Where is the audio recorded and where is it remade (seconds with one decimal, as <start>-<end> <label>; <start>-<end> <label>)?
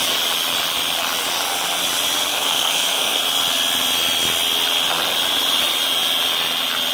0.0-2.3 recorded; 2.3-3.2 remade; 3.2-6.9 recorded